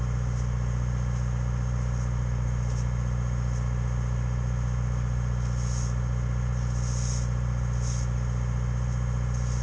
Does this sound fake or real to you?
real